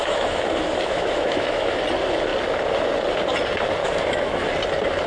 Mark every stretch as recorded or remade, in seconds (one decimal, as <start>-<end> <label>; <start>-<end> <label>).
0.0-1.8 remade; 1.8-3.8 recorded; 3.8-4.5 remade; 4.5-5.1 recorded